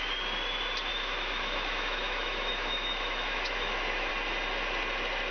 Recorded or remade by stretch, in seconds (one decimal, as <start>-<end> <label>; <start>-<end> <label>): 0.0-0.9 recorded; 0.9-4.1 remade; 4.1-5.3 recorded